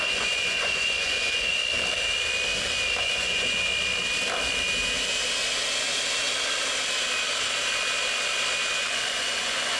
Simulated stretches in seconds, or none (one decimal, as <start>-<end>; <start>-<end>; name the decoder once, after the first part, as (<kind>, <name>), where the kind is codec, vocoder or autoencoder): 0.0-1.6 (vocoder, Vocos); 3.0-3.7; 8.8-9.8